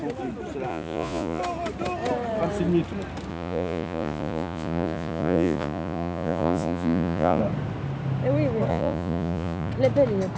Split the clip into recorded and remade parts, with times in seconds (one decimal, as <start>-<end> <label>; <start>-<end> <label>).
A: 0.0-0.7 recorded; 0.7-1.4 remade; 1.4-3.3 recorded; 3.3-7.4 remade; 7.4-8.7 recorded; 8.7-9.7 remade; 9.7-10.4 recorded